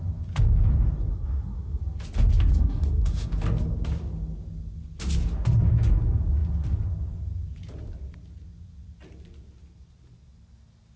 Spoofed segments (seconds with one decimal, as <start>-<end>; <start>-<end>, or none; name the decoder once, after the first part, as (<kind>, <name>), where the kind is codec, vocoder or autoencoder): 1.1-1.8 (codec, SNAC); 2.5-3.3